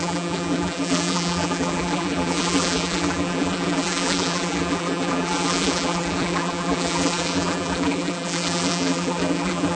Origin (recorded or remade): remade